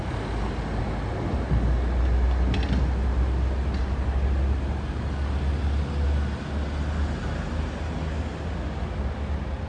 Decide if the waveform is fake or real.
real